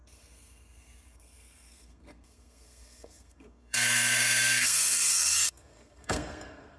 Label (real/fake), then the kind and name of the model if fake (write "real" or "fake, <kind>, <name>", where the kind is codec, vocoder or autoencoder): fake, codec, SNAC